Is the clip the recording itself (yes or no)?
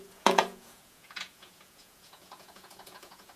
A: no